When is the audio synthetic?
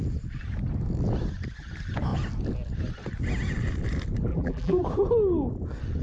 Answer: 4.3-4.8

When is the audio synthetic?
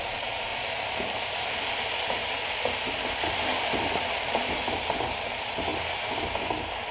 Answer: 0.5-4.5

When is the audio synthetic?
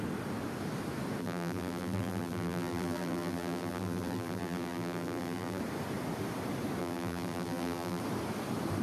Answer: 1.2-5.6; 6.8-8.0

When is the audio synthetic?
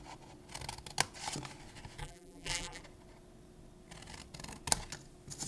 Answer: 2.0-2.8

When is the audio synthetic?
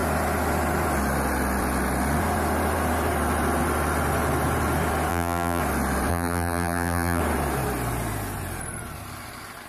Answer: 5.1-5.6; 6.1-7.2